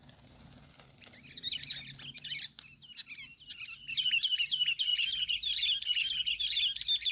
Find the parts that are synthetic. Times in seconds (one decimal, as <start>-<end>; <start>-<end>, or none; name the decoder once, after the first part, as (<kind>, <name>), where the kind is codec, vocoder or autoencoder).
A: none